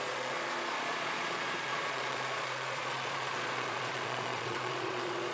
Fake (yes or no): yes